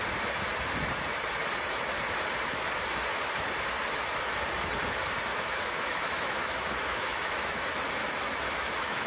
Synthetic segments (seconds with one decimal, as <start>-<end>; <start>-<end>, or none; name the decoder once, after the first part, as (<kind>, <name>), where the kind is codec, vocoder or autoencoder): 5.3-7.6 (autoencoder, DAC-VAE); 8.0-9.1